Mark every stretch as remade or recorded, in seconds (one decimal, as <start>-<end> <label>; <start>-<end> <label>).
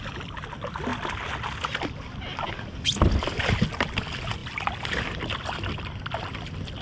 0.0-6.8 recorded